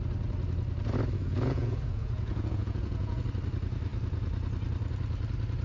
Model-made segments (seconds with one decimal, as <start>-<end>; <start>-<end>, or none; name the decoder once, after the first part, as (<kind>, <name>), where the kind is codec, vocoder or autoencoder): 1.2-3.2 (vocoder, Vocos)